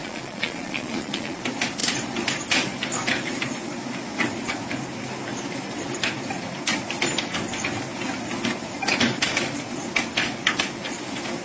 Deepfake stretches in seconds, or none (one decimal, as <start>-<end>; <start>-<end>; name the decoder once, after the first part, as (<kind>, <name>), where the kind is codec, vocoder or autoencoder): 0.0-1.4 (vocoder, Vocos)